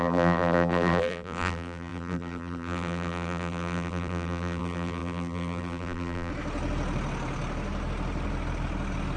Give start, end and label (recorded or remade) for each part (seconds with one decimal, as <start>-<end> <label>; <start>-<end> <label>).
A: 0.0-6.3 remade; 6.3-9.2 recorded